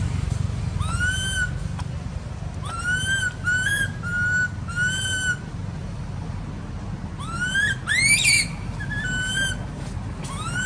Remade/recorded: recorded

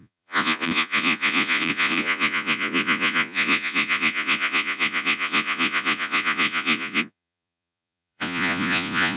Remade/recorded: remade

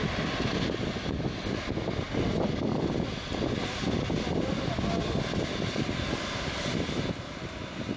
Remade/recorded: recorded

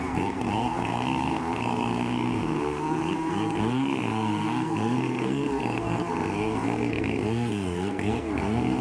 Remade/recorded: remade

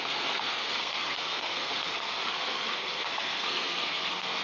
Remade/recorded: remade